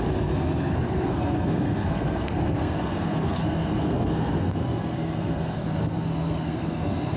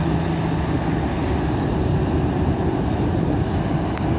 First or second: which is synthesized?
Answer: first